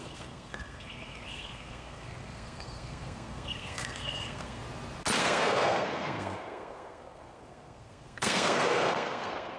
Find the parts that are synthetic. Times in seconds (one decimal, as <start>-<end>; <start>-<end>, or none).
0.0-4.6; 5.2-9.6